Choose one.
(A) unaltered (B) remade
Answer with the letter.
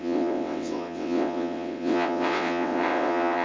B